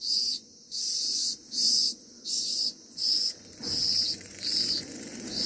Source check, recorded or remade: remade